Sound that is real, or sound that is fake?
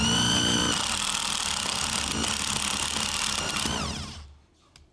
real